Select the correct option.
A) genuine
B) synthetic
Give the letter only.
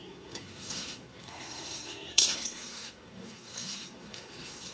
B